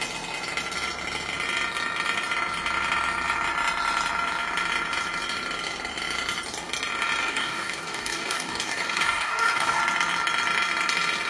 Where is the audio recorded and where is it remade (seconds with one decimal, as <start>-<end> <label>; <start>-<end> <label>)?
0.0-7.2 recorded; 7.2-9.8 remade; 9.8-11.3 recorded